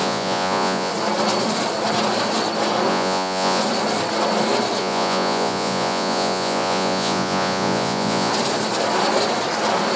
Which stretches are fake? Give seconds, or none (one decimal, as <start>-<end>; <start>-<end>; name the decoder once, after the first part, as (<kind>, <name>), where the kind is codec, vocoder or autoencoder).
0.0-0.9 (vocoder, Vocos); 2.9-3.6; 4.8-8.3